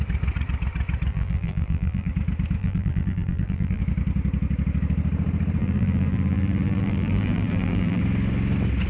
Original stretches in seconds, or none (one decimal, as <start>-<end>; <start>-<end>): 0.0-1.1; 2.1-2.6; 3.8-5.6; 8.0-8.9